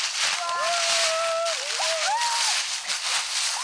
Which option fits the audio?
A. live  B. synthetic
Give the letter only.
A